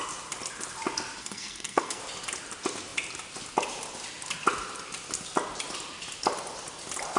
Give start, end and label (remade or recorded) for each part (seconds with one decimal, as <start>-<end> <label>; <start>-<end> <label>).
0.0-1.2 recorded; 1.2-2.0 remade; 2.0-7.2 recorded